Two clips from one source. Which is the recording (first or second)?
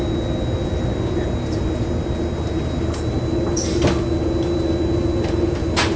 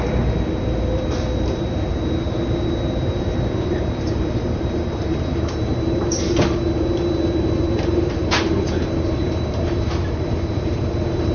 first